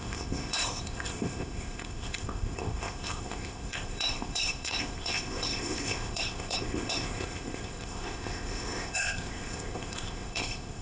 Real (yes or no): no